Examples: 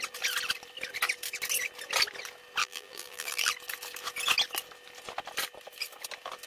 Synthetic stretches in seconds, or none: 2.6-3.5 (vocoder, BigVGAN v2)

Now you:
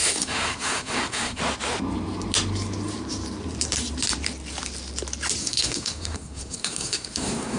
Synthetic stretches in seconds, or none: 0.0-1.4 (codec, SNAC); 5.4-7.6

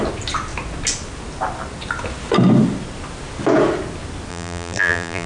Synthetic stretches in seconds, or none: 4.3-5.3 (vocoder, BigVGAN v2)

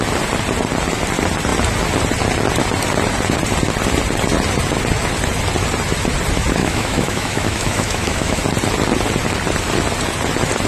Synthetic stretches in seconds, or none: 6.6-8.4 (autoencoder, DAC-VAE)

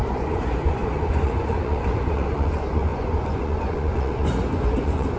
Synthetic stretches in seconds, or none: 0.0-5.2 (vocoder, Vocos)